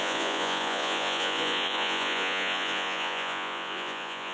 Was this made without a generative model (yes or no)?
no